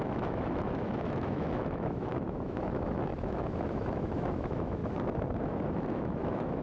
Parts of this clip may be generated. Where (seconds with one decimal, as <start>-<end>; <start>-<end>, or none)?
0.0-4.8; 5.4-6.6